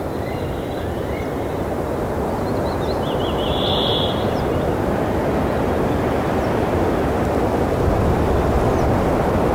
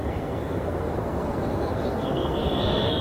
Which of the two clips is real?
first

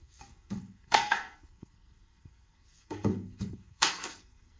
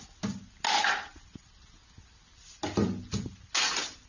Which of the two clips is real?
second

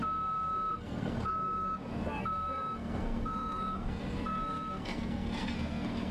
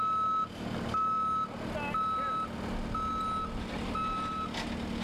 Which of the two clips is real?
second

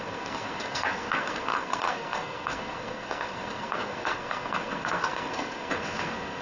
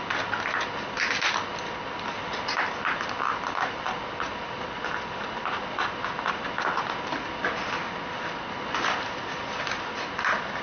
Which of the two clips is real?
second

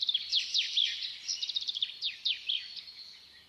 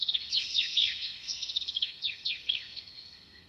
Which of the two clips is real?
first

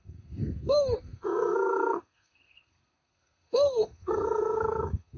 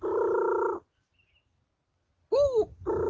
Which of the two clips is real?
second